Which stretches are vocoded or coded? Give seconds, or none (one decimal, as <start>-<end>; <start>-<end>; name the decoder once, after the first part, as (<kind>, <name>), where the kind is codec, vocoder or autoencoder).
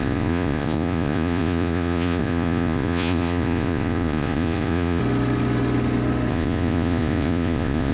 0.0-5.0 (vocoder, Vocos); 6.3-7.9